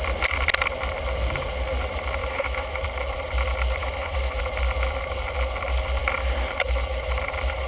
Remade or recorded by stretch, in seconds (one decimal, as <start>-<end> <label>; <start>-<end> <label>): 0.0-2.2 recorded; 2.2-2.8 remade; 2.8-3.8 recorded; 3.8-4.4 remade; 4.4-7.7 recorded